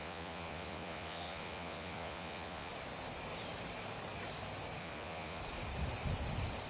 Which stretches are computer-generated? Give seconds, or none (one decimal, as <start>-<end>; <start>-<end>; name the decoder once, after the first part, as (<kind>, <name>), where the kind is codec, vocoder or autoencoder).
0.0-2.7 (vocoder, Vocos); 4.8-5.4